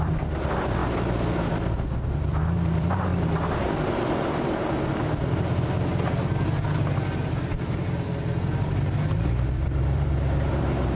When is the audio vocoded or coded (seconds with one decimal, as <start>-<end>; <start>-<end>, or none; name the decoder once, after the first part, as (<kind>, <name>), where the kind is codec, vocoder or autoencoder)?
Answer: 0.0-0.8 (vocoder, BigVGAN v2); 2.0-11.0